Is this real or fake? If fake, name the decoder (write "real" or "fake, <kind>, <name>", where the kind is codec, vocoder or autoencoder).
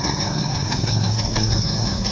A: fake, codec, SNAC